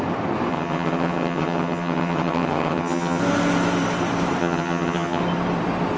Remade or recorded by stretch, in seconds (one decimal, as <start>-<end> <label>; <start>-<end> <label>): 0.0-0.5 recorded; 0.5-3.2 remade; 3.2-4.4 recorded; 4.4-5.2 remade; 5.2-6.0 recorded